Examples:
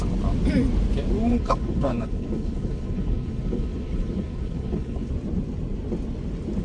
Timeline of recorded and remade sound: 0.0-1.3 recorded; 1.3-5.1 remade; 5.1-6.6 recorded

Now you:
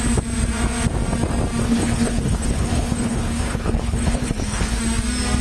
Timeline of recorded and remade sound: 0.0-1.6 recorded; 1.6-4.8 remade; 4.8-5.4 recorded

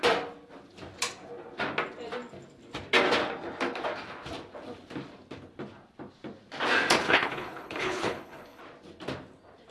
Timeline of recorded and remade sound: 0.0-7.0 recorded; 7.0-8.6 remade; 8.6-9.7 recorded

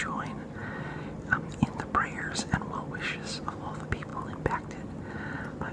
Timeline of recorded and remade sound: 0.0-5.7 recorded

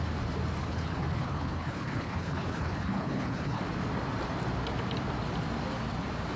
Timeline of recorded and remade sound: 0.0-0.6 recorded; 0.6-3.6 remade; 3.6-6.4 recorded

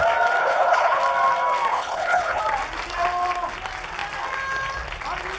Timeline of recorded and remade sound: 0.0-0.4 recorded; 0.4-1.0 remade; 1.0-1.7 recorded; 1.7-2.4 remade; 2.4-5.4 recorded